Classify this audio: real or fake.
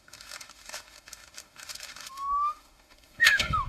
fake